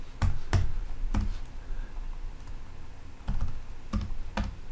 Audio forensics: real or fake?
real